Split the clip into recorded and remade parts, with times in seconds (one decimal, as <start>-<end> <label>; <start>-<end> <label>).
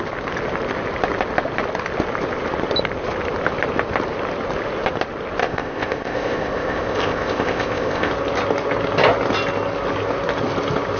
0.0-5.4 recorded; 5.4-8.1 remade; 8.1-11.0 recorded